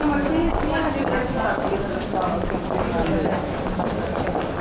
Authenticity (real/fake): real